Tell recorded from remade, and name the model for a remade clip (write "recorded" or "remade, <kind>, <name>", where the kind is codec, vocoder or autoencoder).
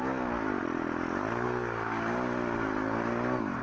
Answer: recorded